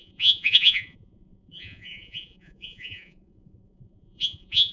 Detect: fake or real fake